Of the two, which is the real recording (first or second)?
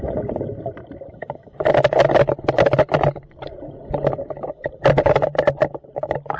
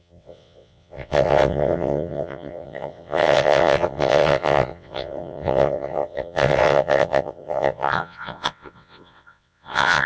first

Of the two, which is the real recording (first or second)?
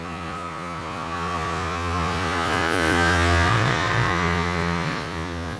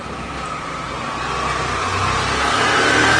second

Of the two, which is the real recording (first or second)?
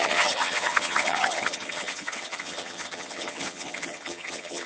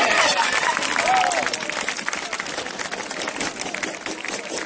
second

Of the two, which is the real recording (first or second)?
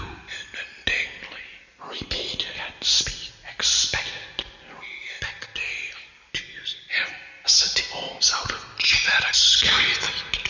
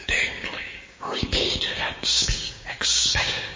first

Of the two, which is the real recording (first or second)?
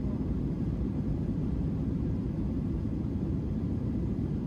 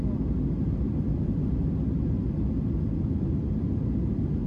second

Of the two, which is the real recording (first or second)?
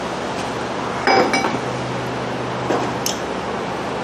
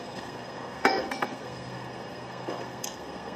first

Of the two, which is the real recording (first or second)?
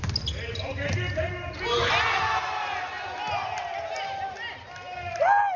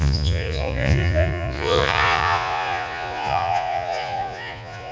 first